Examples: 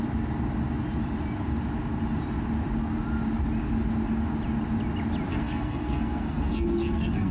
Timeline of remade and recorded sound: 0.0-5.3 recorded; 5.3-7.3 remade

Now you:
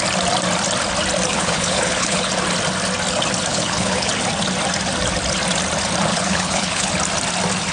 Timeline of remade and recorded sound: 0.0-1.3 recorded; 1.3-2.3 remade; 2.3-3.5 recorded; 3.5-4.1 remade; 4.1-6.1 recorded; 6.1-6.9 remade; 6.9-7.7 recorded

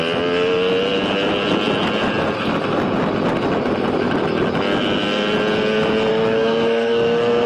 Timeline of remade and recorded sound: 0.0-6.1 recorded; 6.1-7.5 remade

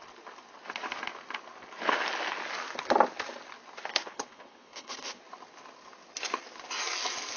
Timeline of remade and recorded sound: 0.0-3.9 recorded; 3.9-5.2 remade; 5.2-7.4 recorded

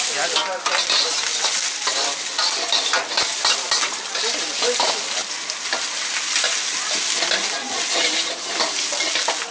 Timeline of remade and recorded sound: 0.0-9.5 recorded

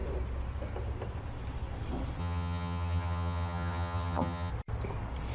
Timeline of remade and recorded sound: 0.0-2.2 recorded; 2.2-4.5 remade; 4.5-5.3 recorded

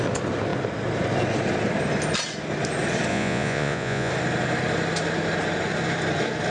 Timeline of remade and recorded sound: 0.0-3.1 recorded; 3.1-4.1 remade; 4.1-6.5 recorded

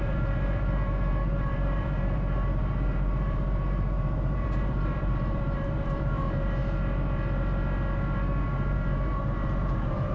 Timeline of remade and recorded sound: 0.0-6.6 remade; 6.6-8.4 recorded; 8.4-10.1 remade